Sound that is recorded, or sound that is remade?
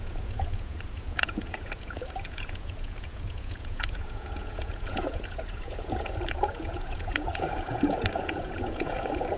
remade